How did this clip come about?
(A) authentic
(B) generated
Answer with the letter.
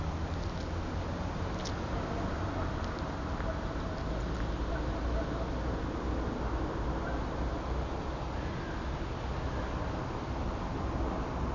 A